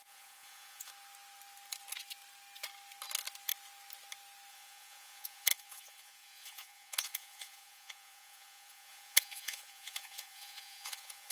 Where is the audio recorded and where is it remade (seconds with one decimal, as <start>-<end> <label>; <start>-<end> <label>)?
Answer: 0.0-0.9 remade; 0.9-4.5 recorded; 4.5-11.3 remade